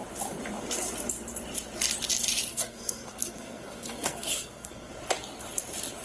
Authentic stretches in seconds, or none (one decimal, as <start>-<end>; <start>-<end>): 0.0-2.5; 4.9-6.0